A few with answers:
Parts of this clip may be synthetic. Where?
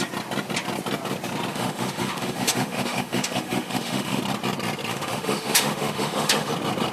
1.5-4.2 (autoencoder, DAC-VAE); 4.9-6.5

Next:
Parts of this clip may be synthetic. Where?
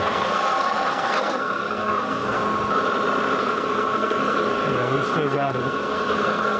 0.0-2.4 (codec, SNAC); 3.4-6.6